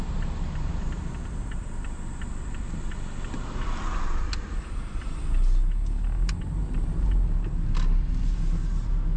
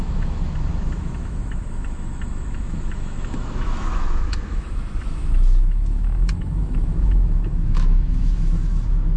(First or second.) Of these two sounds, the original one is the first